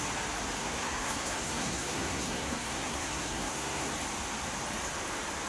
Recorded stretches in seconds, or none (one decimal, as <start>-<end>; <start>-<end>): 0.0-0.6; 3.9-5.5

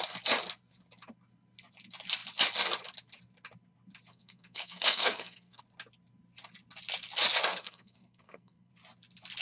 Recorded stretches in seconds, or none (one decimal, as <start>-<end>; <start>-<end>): 0.0-4.1; 5.6-7.5; 8.7-9.4

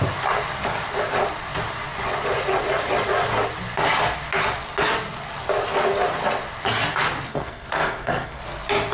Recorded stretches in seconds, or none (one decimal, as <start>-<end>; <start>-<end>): 0.0-7.3; 8.4-8.9

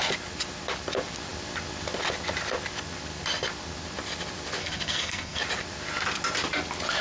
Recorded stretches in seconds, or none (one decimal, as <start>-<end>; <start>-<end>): 0.0-4.6; 5.4-7.0